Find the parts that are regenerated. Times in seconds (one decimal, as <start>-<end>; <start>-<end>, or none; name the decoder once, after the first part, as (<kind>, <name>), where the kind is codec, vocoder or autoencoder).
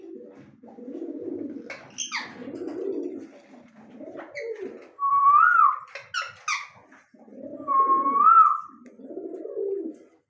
2.4-2.9 (vocoder, BigVGAN v2); 5.1-5.8